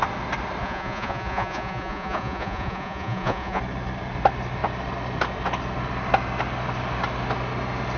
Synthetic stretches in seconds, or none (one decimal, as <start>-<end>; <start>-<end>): 0.6-3.6